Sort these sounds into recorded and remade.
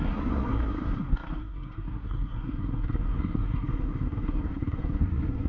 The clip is remade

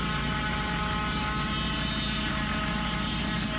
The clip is recorded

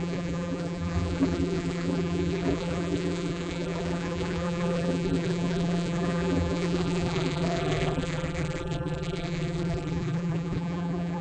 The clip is remade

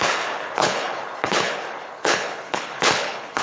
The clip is remade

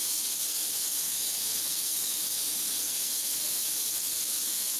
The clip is remade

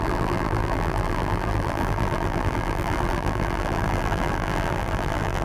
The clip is remade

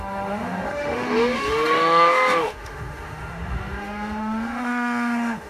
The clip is remade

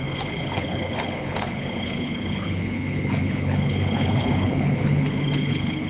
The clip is remade